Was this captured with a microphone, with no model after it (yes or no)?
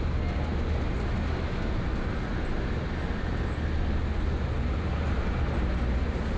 yes